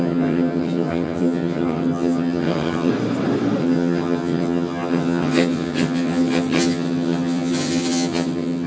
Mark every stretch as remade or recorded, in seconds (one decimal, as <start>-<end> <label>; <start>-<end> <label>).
0.0-2.9 remade; 2.9-3.6 recorded; 3.6-8.7 remade